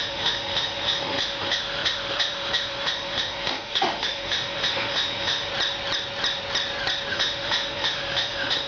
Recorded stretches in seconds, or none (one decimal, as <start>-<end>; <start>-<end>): 5.5-7.1